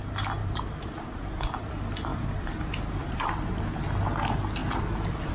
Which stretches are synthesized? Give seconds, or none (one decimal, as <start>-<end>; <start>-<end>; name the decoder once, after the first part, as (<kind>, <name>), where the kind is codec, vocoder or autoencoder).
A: 0.4-1.7 (vocoder, BigVGAN v2); 2.1-3.6